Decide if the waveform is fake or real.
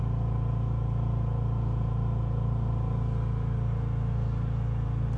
real